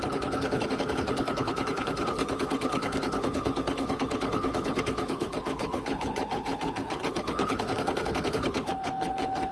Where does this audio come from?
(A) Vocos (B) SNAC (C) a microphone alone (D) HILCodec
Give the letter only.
D